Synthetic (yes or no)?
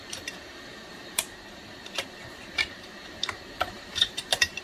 yes